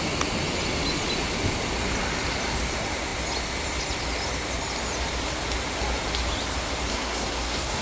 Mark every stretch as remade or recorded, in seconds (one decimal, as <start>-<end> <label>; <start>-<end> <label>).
0.0-6.9 recorded; 6.9-7.8 remade